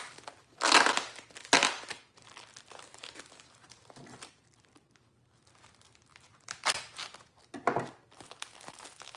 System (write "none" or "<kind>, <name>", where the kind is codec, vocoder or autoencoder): none